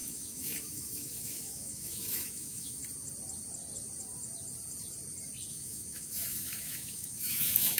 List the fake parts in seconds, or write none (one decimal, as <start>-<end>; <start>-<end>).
0.0-2.8; 5.5-7.8